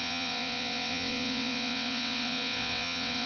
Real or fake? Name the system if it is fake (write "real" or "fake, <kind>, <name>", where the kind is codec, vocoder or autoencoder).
fake, vocoder, WaveNeXt